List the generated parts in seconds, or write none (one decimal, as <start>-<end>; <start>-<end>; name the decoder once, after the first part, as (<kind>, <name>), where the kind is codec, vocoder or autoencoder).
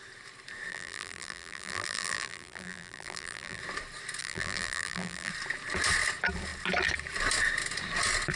0.7-3.6 (vocoder, BigVGAN v2); 4.2-5.3